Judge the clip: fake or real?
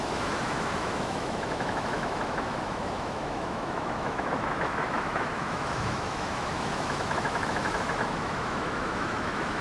fake